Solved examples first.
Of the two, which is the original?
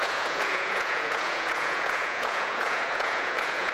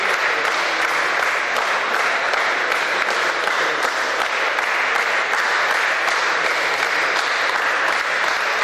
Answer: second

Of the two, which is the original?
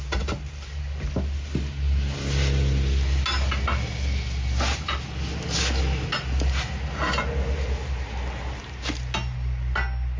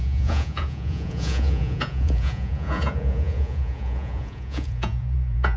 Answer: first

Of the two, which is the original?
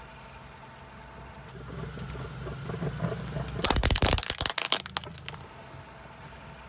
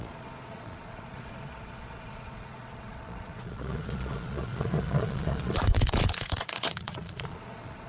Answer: first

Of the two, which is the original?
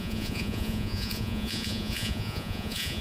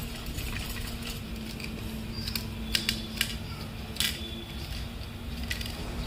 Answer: second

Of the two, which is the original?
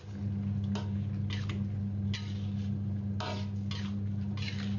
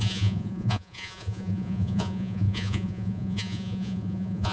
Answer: first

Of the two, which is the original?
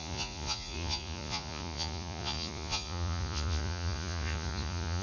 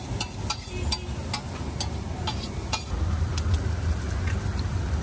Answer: second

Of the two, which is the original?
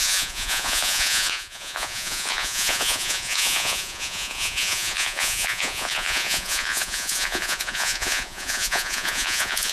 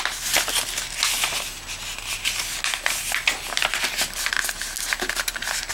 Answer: second